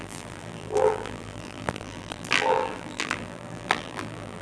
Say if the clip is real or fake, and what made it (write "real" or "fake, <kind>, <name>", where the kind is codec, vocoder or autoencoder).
fake, vocoder, BigVGAN v2